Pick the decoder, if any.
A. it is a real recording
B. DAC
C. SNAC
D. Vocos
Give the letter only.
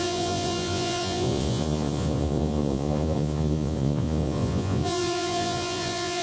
D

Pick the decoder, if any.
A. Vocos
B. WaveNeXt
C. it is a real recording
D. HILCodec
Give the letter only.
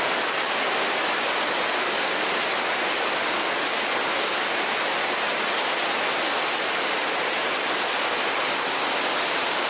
C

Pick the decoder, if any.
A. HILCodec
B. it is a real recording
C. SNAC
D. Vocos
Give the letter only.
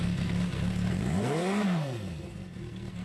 C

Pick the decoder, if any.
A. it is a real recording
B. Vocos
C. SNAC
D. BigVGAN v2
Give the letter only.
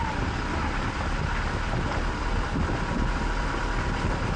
D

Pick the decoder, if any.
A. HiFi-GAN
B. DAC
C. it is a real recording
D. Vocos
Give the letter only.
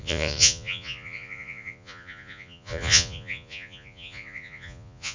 D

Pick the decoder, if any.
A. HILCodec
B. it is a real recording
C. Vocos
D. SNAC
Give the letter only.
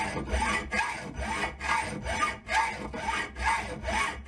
B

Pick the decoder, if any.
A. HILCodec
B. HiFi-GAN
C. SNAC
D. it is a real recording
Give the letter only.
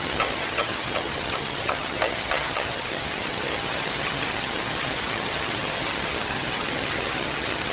B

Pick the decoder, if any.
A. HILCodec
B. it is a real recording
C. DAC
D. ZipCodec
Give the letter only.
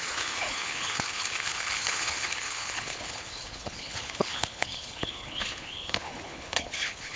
A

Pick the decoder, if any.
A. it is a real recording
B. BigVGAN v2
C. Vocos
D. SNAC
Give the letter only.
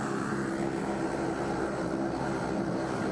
A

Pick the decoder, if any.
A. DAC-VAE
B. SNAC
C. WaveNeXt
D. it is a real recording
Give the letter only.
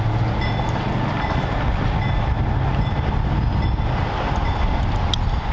D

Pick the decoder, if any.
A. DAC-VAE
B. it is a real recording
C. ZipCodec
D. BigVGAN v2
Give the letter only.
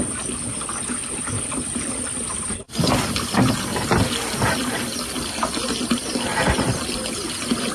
B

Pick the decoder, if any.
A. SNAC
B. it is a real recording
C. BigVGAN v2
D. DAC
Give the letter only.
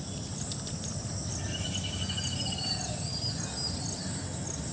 B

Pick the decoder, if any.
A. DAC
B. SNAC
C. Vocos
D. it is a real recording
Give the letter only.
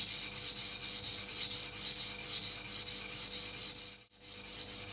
D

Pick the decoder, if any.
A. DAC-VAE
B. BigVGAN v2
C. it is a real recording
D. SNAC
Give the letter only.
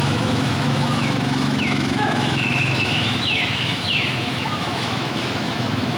A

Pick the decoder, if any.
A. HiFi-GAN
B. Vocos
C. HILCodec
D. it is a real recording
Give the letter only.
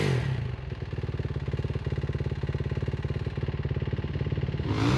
D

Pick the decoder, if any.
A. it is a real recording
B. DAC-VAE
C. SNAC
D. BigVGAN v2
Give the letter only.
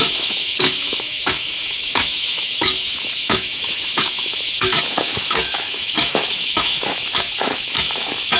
B